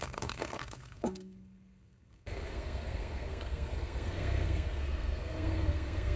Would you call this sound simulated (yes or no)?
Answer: yes